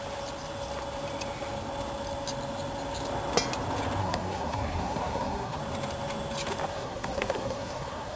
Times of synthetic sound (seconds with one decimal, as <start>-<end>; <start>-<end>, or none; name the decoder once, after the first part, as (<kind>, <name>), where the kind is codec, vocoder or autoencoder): 4.0-5.6 (codec, SNAC); 6.7-8.2